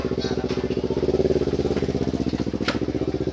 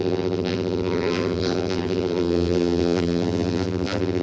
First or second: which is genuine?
first